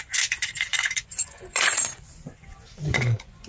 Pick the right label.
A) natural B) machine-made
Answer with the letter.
B